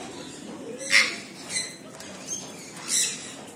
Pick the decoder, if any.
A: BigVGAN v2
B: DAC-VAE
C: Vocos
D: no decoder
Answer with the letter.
D